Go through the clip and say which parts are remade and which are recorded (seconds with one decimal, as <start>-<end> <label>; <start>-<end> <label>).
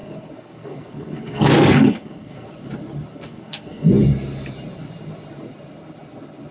0.0-2.5 remade; 2.5-3.1 recorded; 3.1-3.9 remade; 3.9-6.5 recorded